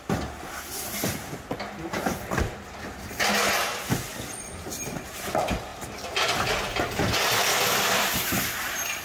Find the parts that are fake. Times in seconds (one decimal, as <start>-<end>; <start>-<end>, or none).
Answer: none